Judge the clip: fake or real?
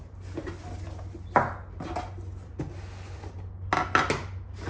real